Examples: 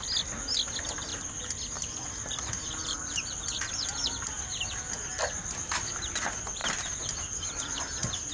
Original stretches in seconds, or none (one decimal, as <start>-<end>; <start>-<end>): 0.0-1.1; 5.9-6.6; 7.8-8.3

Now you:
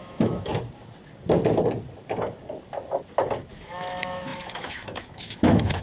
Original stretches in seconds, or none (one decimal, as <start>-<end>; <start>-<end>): 0.5-3.5

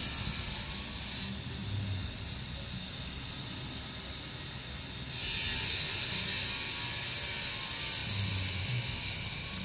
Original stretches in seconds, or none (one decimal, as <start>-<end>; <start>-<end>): 0.0-9.6

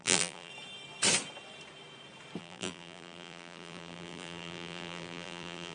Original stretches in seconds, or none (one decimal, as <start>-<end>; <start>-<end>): 0.5-2.4